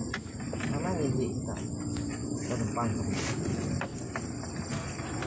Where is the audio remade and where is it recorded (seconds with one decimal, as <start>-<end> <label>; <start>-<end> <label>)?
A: 0.0-0.6 recorded; 0.6-3.9 remade; 3.9-5.3 recorded